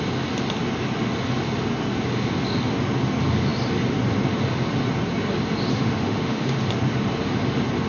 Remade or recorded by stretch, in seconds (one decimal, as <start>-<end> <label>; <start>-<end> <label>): 0.0-5.7 recorded; 5.7-6.6 remade; 6.6-7.9 recorded